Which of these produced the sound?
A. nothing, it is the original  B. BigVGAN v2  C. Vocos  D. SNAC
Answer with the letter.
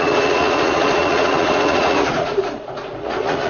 C